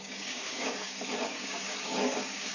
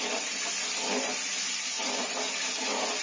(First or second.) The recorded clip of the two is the second